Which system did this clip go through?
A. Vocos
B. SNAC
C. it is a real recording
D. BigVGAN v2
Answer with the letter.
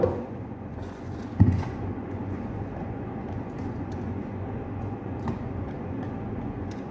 A